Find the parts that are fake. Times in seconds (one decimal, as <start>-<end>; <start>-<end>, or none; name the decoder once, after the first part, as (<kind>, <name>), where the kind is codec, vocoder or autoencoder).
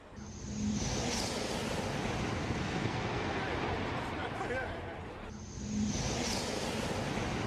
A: 2.4-3.4 (codec, SNAC)